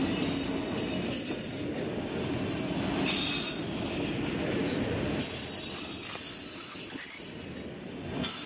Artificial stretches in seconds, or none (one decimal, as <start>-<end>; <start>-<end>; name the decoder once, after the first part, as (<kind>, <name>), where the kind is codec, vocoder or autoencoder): 4.6-5.9 (vocoder, BigVGAN v2)

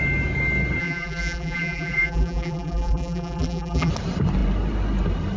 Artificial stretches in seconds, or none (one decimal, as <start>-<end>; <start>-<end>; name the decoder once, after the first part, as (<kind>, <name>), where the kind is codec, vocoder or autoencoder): 0.8-3.9 (vocoder, BigVGAN v2)

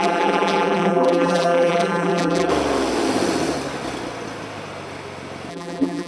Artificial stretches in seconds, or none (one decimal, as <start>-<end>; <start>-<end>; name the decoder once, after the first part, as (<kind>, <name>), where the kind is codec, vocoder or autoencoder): 0.0-2.5 (vocoder, BigVGAN v2); 5.5-6.1

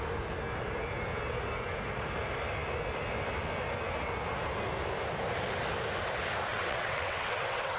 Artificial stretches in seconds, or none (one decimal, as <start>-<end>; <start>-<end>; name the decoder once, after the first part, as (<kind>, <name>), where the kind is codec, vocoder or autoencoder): 6.5-7.8 (vocoder, WaveNeXt)

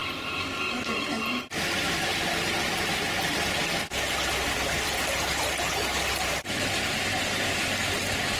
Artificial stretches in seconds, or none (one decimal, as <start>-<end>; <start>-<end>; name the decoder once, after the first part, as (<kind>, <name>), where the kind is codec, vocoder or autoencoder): none